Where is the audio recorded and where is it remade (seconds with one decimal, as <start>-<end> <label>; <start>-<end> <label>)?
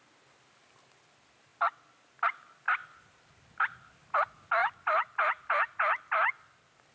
0.0-6.9 recorded